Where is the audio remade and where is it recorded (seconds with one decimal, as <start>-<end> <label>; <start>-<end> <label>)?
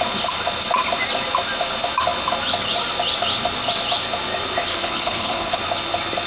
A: 0.0-4.7 recorded; 4.7-5.6 remade; 5.6-6.3 recorded